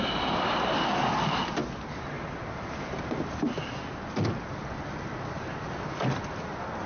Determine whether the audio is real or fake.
real